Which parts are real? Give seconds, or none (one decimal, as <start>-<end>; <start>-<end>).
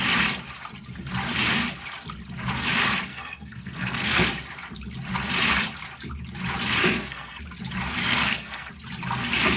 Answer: 0.0-3.1; 4.3-6.8; 7.4-8.0; 8.7-9.6